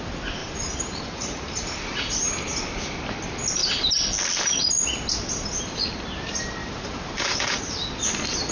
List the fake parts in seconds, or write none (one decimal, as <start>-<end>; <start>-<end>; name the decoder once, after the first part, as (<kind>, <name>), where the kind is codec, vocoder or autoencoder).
0.4-2.3 (vocoder, BigVGAN v2); 6.6-7.4